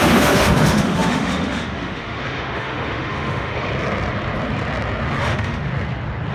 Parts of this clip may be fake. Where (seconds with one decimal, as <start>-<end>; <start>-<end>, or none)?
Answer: 0.0-3.7; 5.2-5.7